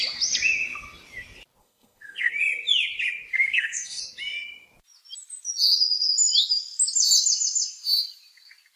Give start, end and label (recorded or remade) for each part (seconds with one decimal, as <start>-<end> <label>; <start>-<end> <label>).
0.0-1.6 recorded; 1.6-2.3 remade; 2.3-3.3 recorded; 3.3-4.0 remade; 4.0-8.8 recorded

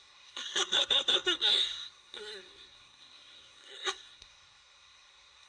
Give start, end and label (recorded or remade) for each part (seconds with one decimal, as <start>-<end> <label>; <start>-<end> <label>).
0.0-5.5 remade

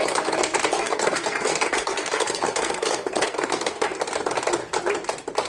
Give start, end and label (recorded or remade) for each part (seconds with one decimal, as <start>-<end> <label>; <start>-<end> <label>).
0.0-0.7 recorded; 0.7-4.0 remade; 4.0-5.5 recorded